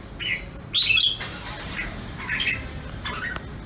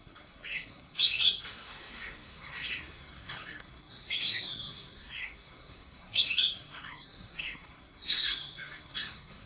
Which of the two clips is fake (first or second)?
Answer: second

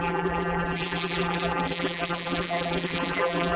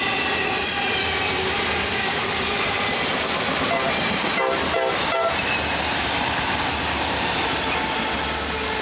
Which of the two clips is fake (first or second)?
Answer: first